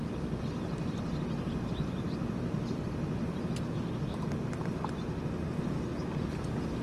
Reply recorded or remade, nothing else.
recorded